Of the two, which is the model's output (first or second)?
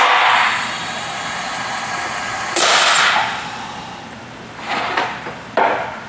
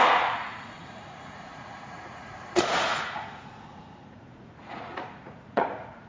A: second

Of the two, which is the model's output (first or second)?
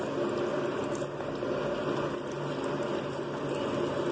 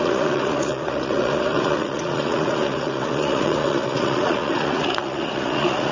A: second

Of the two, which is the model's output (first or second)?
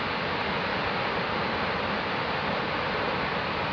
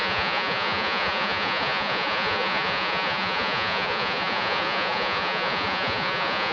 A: second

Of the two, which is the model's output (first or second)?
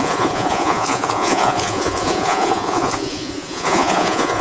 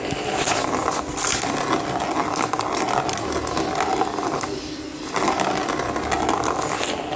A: first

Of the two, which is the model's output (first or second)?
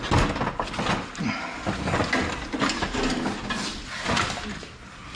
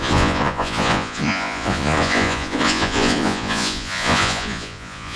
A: second